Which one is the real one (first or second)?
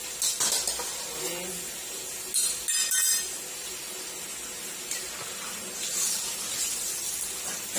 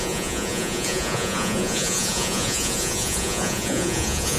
first